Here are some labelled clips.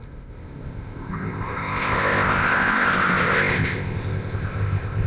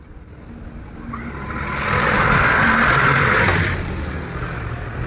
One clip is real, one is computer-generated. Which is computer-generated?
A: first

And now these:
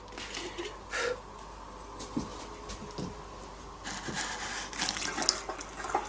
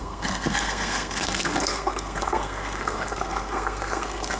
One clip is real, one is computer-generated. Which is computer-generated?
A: second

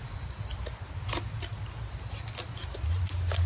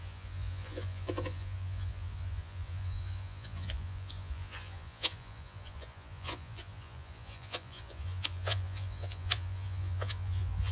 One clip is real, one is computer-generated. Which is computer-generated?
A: second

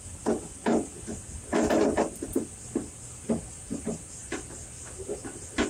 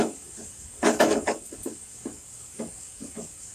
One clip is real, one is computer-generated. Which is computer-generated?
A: second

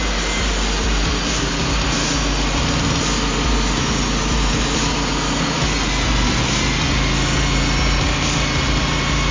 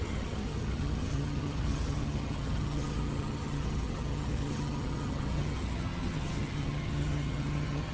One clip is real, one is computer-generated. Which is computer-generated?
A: second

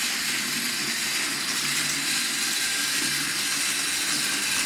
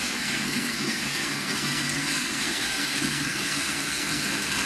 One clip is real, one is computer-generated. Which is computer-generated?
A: second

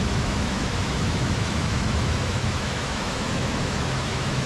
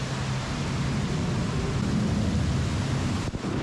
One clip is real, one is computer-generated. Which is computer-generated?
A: first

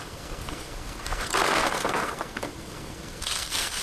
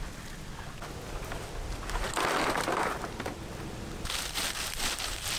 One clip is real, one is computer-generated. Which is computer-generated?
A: first